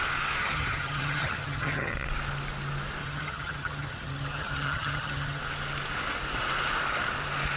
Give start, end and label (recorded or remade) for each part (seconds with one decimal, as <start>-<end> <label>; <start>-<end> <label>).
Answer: 0.0-0.4 recorded; 0.4-1.9 remade; 1.9-3.0 recorded; 3.0-5.4 remade; 5.4-7.6 recorded